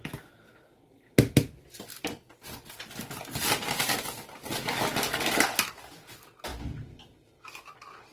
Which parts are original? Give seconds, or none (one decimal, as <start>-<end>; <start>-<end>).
0.0-6.5; 7.3-8.1